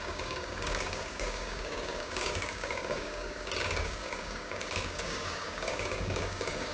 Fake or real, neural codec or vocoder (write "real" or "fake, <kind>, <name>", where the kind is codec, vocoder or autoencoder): fake, codec, DAC